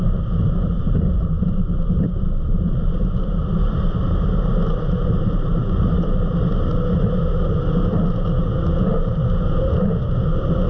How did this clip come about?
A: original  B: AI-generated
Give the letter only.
B